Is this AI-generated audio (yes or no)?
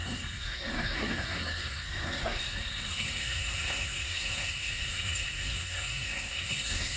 yes